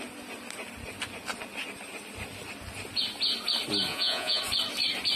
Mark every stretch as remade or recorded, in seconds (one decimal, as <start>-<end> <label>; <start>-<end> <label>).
0.0-3.9 recorded; 3.9-4.4 remade; 4.4-5.2 recorded